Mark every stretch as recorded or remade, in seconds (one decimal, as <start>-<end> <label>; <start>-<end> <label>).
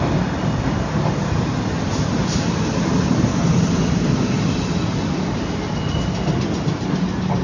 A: 0.0-7.4 recorded